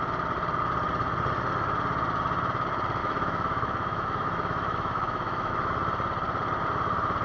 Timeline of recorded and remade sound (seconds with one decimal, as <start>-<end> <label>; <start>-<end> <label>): 0.0-3.0 recorded; 3.0-5.5 remade; 5.5-7.2 recorded